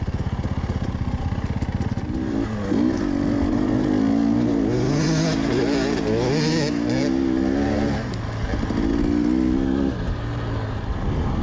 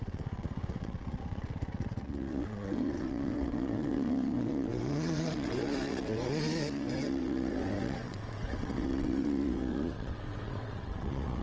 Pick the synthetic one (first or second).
second